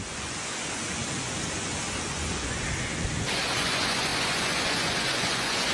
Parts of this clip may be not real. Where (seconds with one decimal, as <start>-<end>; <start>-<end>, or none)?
0.0-5.7